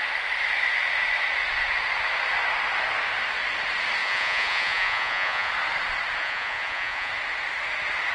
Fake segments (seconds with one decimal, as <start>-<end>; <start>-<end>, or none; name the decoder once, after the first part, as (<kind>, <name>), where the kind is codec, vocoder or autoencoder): 4.0-5.5 (vocoder, Vocos); 6.2-7.1